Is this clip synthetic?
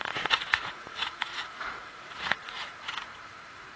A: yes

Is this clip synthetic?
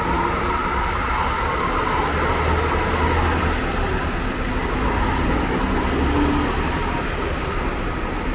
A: no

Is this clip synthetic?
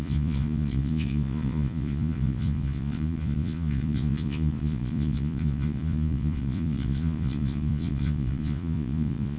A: yes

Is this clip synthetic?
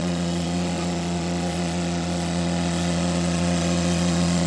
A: yes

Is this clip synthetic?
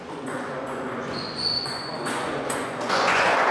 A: yes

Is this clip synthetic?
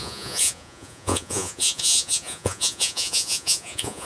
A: yes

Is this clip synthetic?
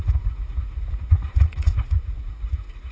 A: yes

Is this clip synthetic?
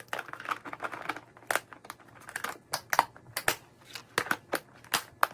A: no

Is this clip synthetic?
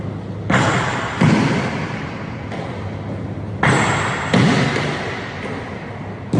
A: no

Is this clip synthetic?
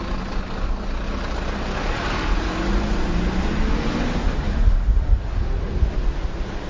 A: no